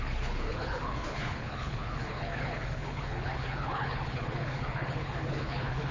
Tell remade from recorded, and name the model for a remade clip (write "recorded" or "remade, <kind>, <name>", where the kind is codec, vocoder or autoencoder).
remade, codec, HILCodec